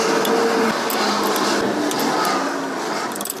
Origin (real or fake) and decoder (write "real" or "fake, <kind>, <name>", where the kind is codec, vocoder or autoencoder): real